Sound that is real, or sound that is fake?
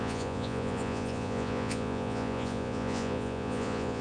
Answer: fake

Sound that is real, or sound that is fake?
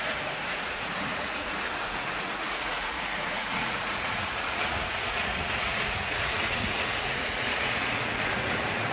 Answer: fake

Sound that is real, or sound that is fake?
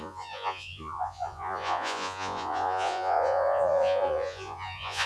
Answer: fake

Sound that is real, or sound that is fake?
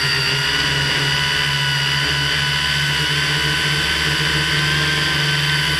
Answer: real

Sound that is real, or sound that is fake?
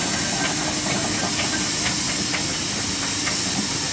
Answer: real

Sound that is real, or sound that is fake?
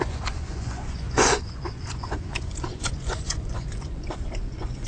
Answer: fake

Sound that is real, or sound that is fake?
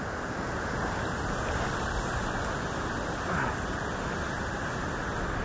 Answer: real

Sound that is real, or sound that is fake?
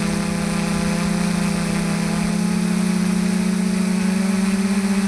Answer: real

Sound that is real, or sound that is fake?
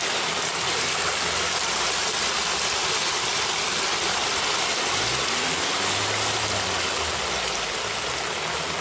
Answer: real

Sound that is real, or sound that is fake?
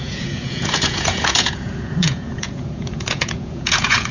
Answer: fake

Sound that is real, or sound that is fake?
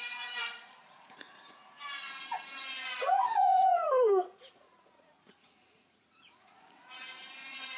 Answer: fake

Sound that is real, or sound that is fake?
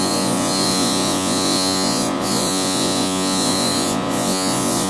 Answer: fake